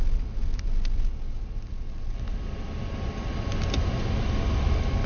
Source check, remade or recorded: recorded